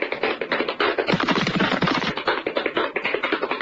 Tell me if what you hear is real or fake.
fake